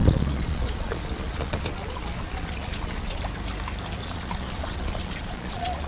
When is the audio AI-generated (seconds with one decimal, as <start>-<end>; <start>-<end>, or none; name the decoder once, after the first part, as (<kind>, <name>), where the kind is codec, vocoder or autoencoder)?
0.0-3.2 (vocoder, Vocos); 4.0-5.9